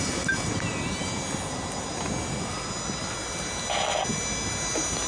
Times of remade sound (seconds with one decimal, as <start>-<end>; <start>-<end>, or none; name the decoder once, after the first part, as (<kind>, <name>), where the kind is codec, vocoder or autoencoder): none